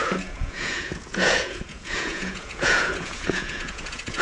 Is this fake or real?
fake